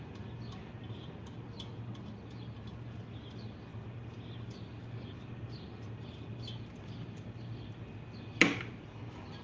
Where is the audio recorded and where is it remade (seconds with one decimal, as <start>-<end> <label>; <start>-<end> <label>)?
0.0-9.4 recorded